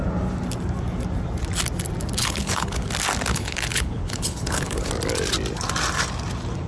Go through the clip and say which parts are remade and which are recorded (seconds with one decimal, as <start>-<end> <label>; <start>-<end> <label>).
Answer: 0.0-2.2 recorded; 2.2-2.9 remade; 2.9-3.3 recorded; 3.3-4.9 remade; 4.9-6.7 recorded